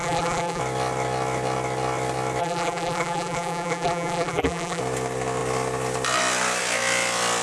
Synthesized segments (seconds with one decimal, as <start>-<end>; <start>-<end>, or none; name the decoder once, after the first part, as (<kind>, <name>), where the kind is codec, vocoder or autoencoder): 0.0-0.6 (vocoder, BigVGAN v2); 2.4-4.8